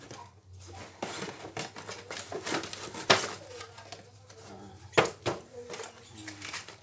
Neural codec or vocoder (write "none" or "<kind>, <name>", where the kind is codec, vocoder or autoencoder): none